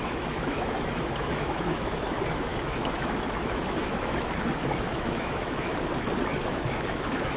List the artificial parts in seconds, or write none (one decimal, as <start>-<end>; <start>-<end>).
0.0-5.7; 6.3-7.4